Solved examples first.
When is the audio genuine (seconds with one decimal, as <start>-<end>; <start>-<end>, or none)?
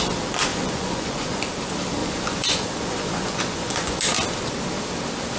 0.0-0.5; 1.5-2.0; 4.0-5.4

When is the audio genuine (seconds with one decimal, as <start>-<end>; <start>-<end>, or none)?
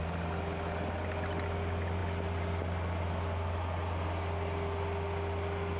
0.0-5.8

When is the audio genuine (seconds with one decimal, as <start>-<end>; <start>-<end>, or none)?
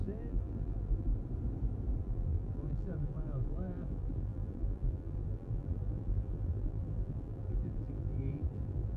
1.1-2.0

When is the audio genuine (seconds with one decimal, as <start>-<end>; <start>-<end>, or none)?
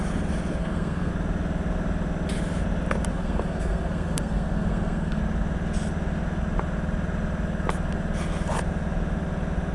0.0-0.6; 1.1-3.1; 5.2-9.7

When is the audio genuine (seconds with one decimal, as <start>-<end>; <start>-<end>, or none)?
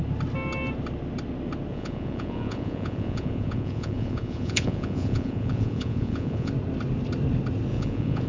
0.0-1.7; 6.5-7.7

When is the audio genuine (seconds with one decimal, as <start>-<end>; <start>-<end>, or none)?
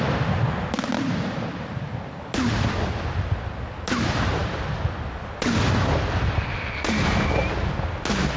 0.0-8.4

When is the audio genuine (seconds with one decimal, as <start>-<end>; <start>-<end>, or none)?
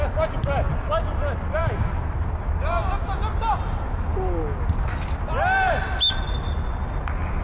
0.0-7.4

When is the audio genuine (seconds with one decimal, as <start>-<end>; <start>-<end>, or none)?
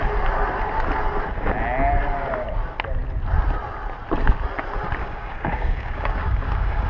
0.0-5.0